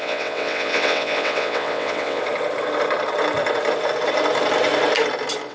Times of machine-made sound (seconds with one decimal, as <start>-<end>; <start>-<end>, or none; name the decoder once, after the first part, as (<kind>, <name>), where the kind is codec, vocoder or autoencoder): 0.0-2.2 (vocoder, WaveNeXt)